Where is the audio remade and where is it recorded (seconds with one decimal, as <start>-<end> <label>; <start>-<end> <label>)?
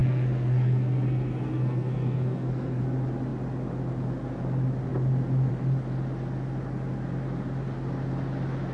0.0-2.8 remade; 2.8-8.7 recorded